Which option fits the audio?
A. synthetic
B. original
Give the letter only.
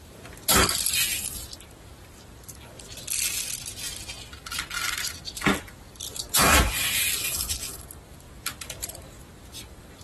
B